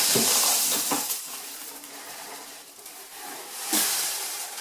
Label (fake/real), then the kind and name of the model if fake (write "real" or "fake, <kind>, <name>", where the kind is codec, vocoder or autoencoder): fake, vocoder, BigVGAN v2